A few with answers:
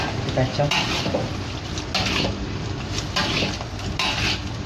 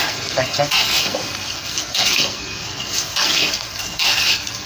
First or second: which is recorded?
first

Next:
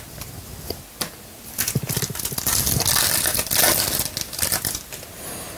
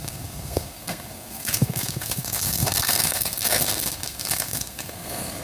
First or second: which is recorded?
first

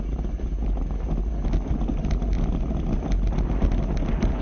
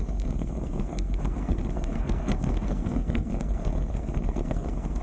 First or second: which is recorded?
first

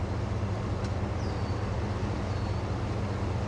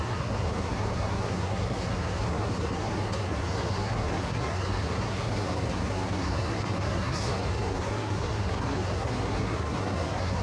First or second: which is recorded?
first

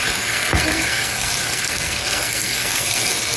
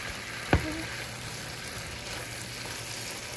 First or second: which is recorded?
second